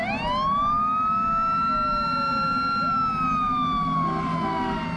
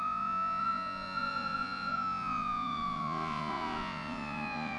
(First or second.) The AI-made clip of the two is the second